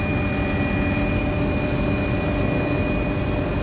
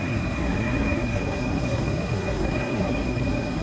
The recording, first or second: first